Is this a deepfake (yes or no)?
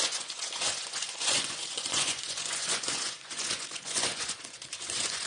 yes